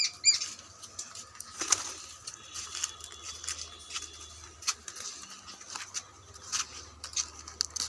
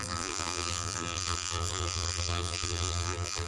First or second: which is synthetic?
second